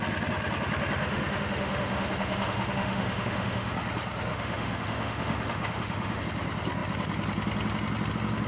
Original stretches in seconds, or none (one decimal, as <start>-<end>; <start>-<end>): 0.0-1.0; 3.7-4.3; 6.2-8.5